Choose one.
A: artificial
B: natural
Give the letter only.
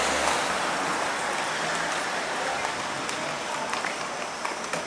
B